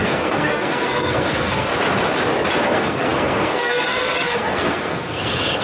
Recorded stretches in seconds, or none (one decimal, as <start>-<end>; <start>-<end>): 1.7-2.6